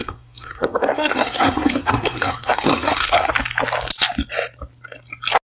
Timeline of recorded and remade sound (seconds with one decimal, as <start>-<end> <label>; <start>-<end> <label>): 0.0-3.3 remade; 3.3-5.6 recorded